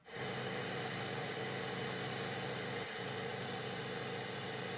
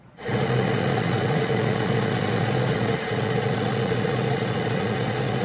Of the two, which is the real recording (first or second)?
first